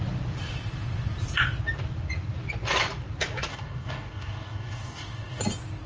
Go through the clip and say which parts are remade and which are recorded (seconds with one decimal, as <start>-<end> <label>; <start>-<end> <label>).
0.0-3.5 recorded; 3.5-5.4 remade; 5.4-5.9 recorded